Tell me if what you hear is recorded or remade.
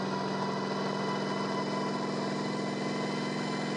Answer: recorded